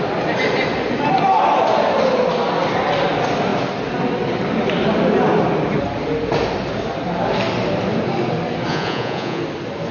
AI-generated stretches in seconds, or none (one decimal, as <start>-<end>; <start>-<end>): 8.7-9.4